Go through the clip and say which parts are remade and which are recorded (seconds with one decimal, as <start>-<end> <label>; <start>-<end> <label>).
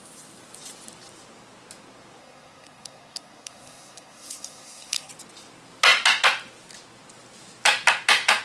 0.0-2.2 recorded; 2.2-5.1 remade; 5.1-8.4 recorded